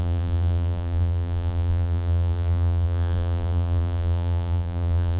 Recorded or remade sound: remade